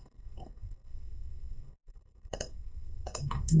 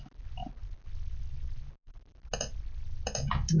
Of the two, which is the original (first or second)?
second